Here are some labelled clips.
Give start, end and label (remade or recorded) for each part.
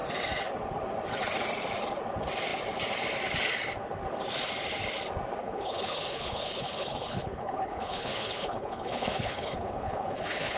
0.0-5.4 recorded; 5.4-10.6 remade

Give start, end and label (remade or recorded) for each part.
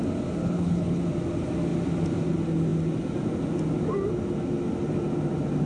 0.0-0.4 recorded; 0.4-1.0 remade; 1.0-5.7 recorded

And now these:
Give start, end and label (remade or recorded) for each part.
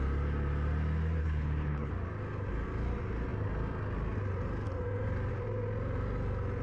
0.0-1.2 recorded; 1.2-1.9 remade; 1.9-6.6 recorded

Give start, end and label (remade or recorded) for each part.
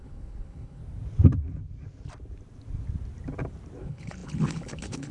0.0-0.8 remade; 0.8-3.8 recorded; 3.8-5.1 remade